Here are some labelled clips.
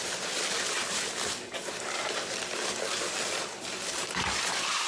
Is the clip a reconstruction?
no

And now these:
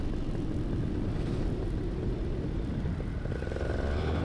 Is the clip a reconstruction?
yes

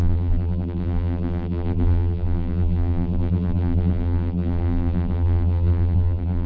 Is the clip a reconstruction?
yes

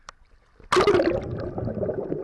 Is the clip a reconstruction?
no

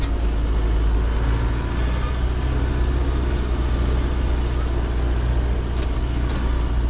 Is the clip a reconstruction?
no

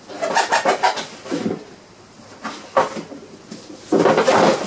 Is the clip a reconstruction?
no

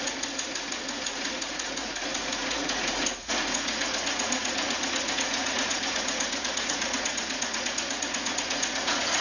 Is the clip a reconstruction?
yes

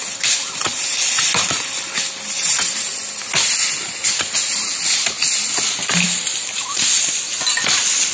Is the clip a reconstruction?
no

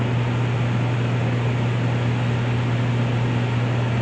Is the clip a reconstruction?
no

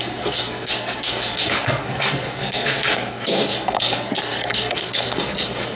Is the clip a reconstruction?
yes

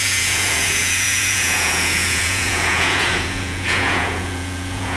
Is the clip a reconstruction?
yes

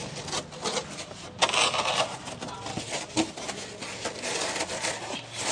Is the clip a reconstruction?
no